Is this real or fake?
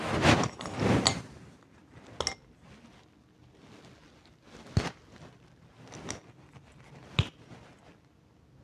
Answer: real